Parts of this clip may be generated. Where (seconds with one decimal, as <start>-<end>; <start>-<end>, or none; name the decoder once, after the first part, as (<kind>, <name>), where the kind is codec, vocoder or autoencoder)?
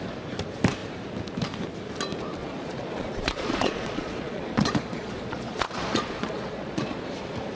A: 2.4-7.0 (vocoder, Vocos)